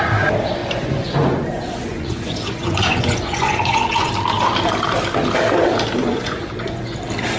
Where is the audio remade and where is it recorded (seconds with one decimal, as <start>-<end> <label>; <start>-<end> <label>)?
0.0-0.6 recorded; 0.6-4.1 remade; 4.1-6.0 recorded; 6.0-7.0 remade; 7.0-7.4 recorded